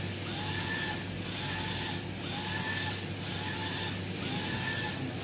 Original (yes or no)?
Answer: yes